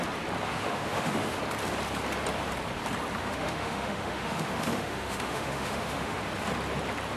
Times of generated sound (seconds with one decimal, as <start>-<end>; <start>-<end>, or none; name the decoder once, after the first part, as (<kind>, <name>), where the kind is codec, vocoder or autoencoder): 0.5-1.4 (autoencoder, DAC-VAE); 3.2-6.2